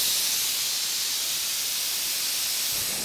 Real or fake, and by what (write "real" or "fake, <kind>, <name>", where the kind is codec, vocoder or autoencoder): real